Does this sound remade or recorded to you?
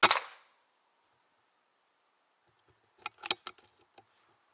recorded